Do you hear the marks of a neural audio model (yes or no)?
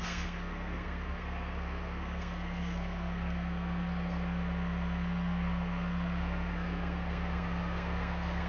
yes